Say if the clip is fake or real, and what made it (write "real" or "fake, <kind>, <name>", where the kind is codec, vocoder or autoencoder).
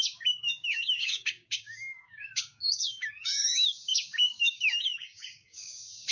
fake, codec, DAC